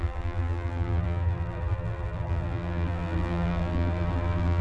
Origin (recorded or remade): remade